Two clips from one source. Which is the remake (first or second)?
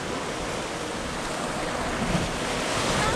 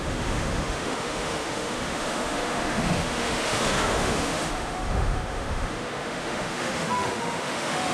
second